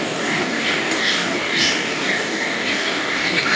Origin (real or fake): fake